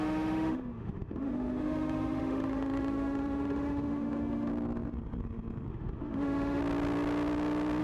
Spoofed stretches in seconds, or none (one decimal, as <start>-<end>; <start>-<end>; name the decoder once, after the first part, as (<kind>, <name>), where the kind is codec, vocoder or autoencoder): 0.0-4.5 (autoencoder, DAC-VAE); 5.7-6.6